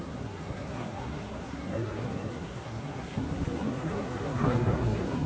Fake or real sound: fake